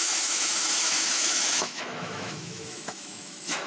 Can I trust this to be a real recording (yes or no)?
no